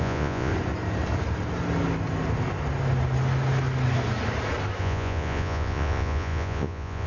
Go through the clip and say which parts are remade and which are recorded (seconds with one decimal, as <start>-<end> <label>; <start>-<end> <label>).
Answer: 0.0-0.5 remade; 0.5-4.8 recorded; 4.8-7.1 remade